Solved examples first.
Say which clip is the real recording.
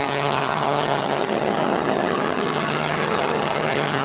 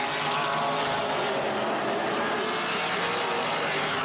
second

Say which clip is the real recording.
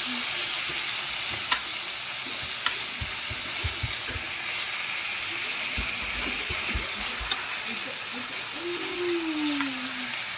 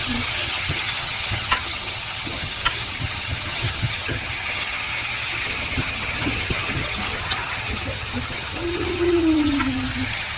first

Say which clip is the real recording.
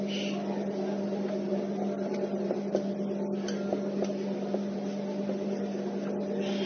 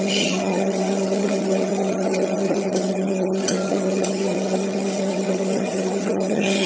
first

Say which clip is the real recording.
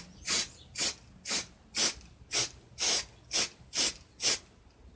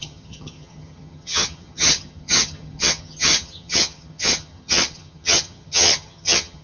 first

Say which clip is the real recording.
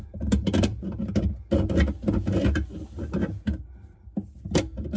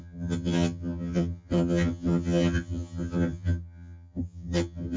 first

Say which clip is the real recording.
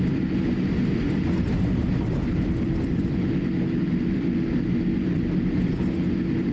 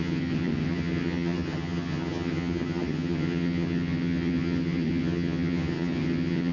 first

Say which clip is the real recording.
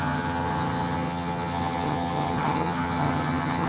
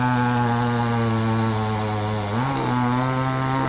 second